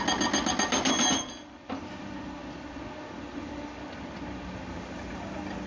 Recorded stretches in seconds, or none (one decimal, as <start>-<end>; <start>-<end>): 0.0-5.7